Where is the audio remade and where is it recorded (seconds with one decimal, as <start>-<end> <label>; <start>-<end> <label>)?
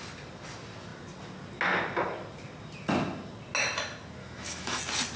0.0-4.2 recorded; 4.2-4.8 remade; 4.8-5.2 recorded